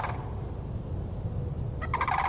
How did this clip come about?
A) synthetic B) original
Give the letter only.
A